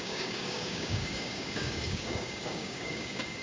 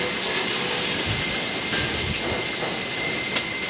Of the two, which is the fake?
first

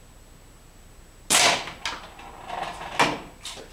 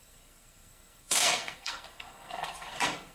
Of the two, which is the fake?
second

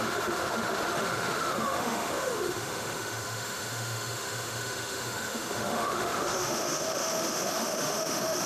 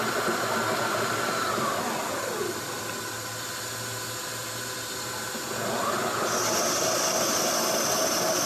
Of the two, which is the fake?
first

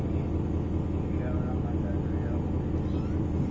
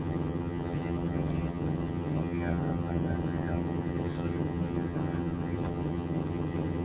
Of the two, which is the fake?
second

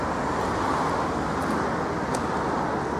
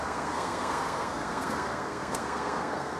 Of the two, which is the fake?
second